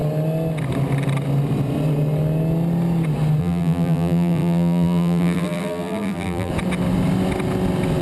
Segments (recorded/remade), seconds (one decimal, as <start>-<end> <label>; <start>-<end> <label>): 0.0-3.4 recorded; 3.4-6.5 remade; 6.5-8.0 recorded